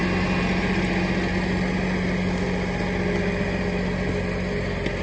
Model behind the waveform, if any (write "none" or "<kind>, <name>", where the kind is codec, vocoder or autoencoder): none